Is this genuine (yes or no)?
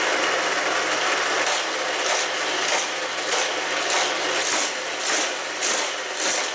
yes